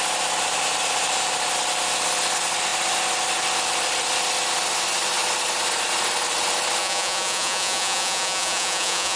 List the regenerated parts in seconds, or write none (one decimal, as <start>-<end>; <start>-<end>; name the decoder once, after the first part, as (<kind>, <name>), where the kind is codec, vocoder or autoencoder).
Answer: 6.8-9.2 (vocoder, Vocos)